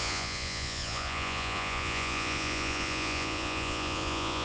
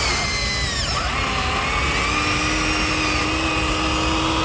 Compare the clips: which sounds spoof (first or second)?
first